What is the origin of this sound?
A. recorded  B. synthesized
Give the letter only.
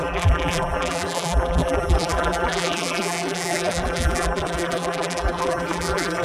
B